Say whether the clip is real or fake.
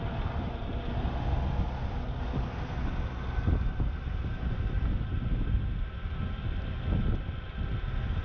real